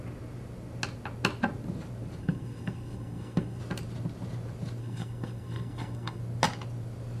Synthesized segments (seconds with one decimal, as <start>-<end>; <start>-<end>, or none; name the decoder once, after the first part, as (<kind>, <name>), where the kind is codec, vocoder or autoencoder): 2.2-3.6 (codec, SNAC); 4.8-6.2